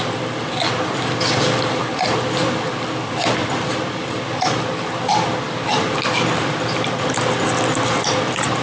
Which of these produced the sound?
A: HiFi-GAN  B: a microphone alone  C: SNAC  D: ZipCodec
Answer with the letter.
B